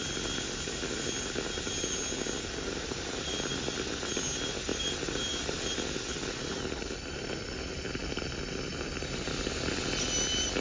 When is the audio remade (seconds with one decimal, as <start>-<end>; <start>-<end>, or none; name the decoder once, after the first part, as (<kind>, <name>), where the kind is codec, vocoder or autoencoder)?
0.0-0.7 (vocoder, BigVGAN v2); 4.7-6.1